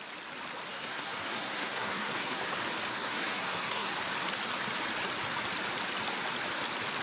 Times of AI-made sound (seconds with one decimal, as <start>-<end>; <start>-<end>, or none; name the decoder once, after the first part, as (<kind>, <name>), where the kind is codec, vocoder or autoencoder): 0.7-2.4 (codec, SNAC); 2.9-3.9